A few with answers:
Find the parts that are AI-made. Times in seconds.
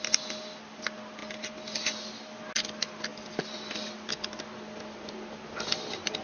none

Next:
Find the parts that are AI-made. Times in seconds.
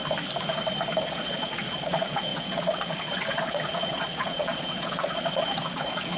1.0-6.2 (vocoder, Vocos)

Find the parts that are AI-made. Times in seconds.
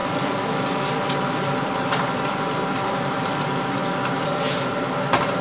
0.0-3.2 (vocoder, BigVGAN v2)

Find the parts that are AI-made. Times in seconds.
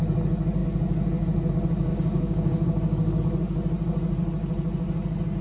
1.9-3.2 (codec, DAC)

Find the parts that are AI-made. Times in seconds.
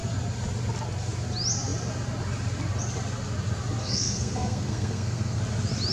3.8-5.4 (codec, SNAC)